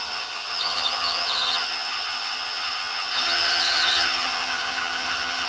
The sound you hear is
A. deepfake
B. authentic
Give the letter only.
A